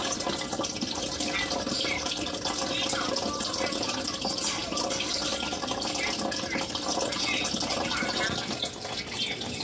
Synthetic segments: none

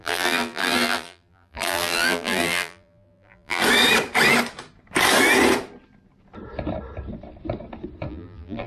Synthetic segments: 0.0-3.6; 8.1-8.7

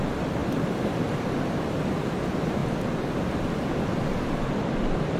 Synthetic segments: none

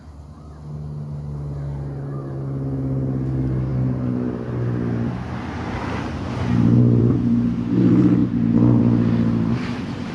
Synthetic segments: 8.2-8.8

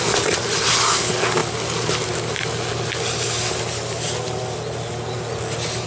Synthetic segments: none

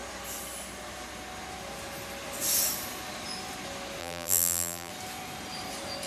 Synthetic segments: 4.0-4.9

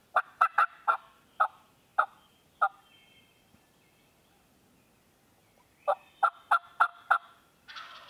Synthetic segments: 5.4-6.4; 6.9-8.1

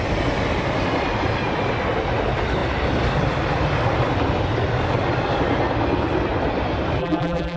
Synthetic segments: 7.0-7.6